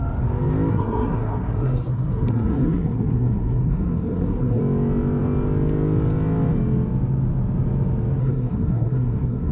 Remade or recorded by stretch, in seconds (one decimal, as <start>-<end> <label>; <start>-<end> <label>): 0.0-0.7 recorded; 0.7-4.6 remade; 4.6-8.2 recorded; 8.2-9.5 remade